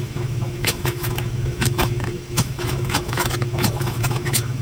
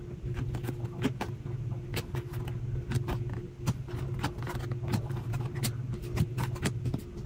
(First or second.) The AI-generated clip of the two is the first